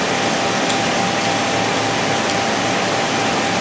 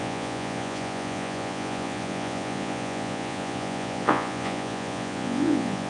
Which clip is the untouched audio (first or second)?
first